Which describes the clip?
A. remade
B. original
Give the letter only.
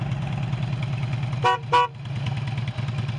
B